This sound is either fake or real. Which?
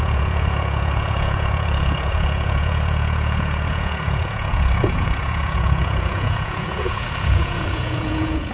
fake